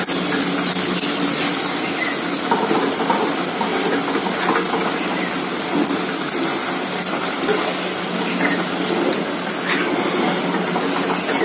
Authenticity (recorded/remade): recorded